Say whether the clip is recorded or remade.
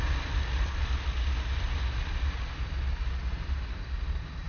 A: recorded